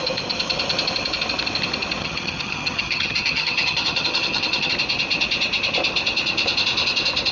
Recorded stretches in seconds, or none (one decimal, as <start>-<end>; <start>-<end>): 0.0-2.0; 4.7-7.3